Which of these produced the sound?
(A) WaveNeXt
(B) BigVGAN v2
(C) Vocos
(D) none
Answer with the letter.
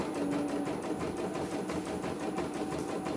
D